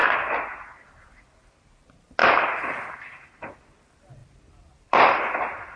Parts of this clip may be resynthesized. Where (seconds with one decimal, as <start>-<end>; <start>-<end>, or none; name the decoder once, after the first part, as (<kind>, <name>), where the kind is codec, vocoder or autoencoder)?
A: 2.2-3.0 (vocoder, BigVGAN v2); 4.2-5.8